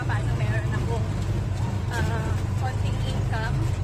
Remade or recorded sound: recorded